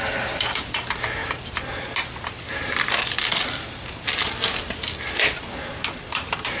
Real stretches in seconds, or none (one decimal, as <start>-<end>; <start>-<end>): 0.0-6.6